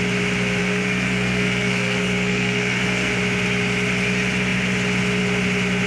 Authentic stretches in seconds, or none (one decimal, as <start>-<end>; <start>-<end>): 0.0-0.6; 3.1-5.9